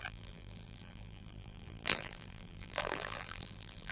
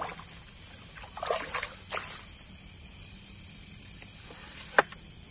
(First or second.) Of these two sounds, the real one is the second